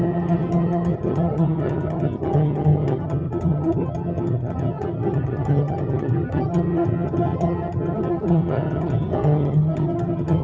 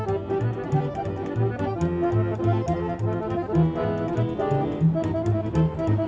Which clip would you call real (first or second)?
second